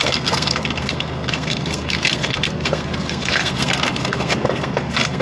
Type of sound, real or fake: fake